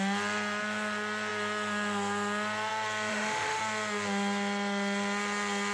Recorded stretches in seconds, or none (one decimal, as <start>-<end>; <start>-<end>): 0.0-3.1; 3.6-5.7